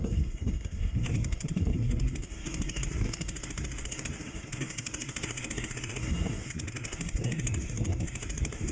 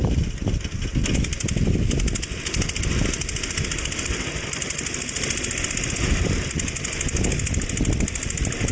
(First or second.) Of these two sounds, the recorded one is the second